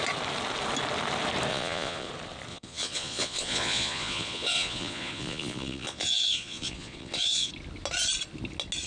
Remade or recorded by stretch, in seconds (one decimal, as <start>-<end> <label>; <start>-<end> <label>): 0.0-1.5 recorded; 1.5-2.1 remade; 2.1-2.5 recorded; 2.5-7.5 remade; 7.5-8.9 recorded